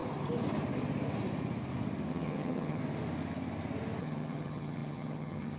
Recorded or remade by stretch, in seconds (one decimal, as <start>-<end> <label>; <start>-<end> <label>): 0.0-2.1 recorded; 2.1-2.8 remade; 2.8-4.0 recorded; 4.0-5.6 remade